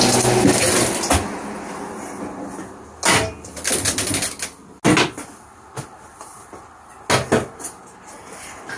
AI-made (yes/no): no